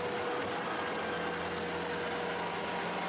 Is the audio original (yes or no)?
yes